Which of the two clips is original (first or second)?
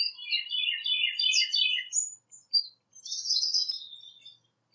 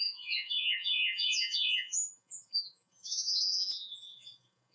first